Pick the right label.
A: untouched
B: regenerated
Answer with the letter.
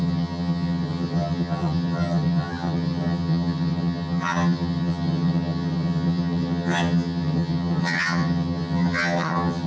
B